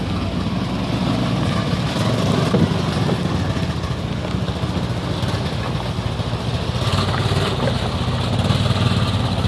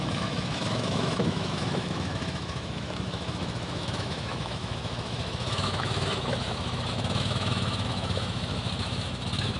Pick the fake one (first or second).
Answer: second